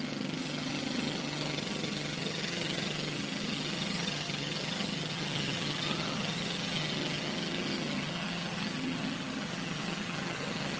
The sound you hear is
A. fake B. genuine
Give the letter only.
A